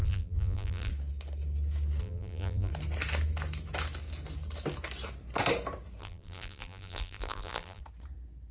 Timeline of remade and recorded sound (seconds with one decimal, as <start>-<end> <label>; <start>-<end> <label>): 0.0-0.9 remade; 0.9-2.0 recorded; 2.0-2.7 remade; 2.7-6.0 recorded; 6.0-7.8 remade; 7.8-8.5 recorded